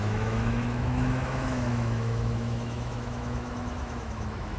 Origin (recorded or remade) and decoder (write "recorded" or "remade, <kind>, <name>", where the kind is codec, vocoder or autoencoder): remade, autoencoder, DAC-VAE